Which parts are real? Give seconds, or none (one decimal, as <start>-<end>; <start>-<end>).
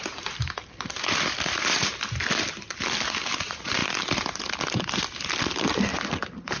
0.0-6.6